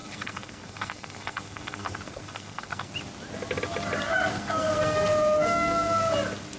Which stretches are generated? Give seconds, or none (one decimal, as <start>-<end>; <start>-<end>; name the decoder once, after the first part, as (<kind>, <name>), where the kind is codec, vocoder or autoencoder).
0.0-2.9 (codec, SNAC); 4.3-6.1

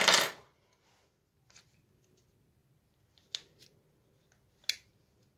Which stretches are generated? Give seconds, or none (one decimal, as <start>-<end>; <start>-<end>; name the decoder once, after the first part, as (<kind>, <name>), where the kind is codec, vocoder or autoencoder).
none

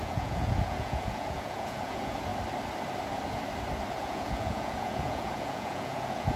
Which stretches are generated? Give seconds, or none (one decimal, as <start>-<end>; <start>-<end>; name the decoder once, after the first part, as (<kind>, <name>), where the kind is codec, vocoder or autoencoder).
0.0-2.3 (vocoder, Vocos); 3.9-6.4

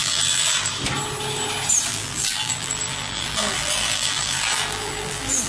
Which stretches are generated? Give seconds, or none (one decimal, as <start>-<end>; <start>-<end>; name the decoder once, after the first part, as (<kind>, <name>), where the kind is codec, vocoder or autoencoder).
0.0-0.7 (vocoder, BigVGAN v2); 1.9-5.5